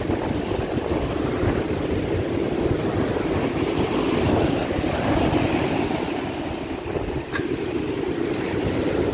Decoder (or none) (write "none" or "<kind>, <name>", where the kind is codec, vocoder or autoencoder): none